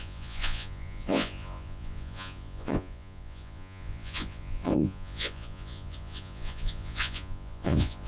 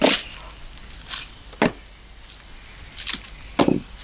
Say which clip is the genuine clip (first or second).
second